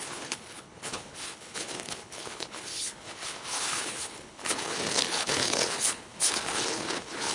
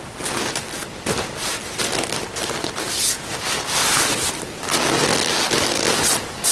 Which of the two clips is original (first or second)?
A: second